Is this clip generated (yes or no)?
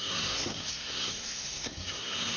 yes